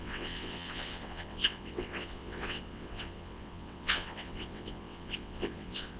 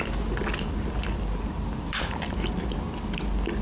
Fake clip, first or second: first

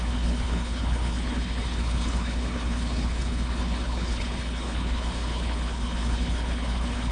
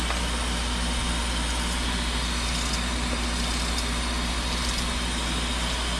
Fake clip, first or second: first